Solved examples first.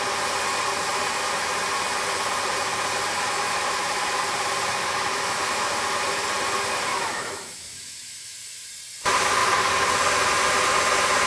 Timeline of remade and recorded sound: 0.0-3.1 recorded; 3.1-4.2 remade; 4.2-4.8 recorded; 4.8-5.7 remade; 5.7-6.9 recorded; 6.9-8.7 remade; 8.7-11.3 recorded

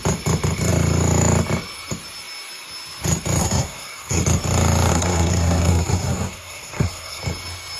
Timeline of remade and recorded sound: 0.0-3.4 recorded; 3.4-4.2 remade; 4.2-4.9 recorded; 4.9-7.2 remade; 7.2-7.8 recorded